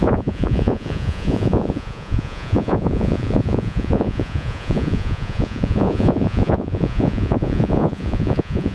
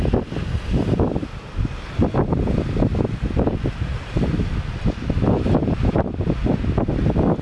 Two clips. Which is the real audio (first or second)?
second